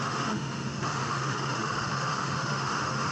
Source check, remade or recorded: remade